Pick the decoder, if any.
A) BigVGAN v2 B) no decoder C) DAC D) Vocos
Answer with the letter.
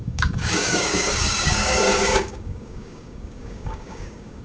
C